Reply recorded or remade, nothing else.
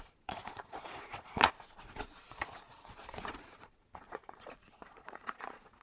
remade